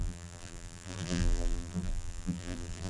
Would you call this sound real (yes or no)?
no